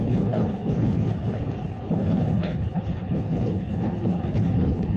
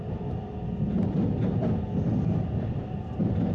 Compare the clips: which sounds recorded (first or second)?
second